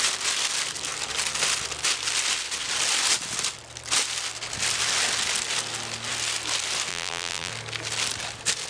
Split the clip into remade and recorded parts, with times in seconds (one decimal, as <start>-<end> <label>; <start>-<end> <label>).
0.0-6.9 recorded; 6.9-7.5 remade; 7.5-8.7 recorded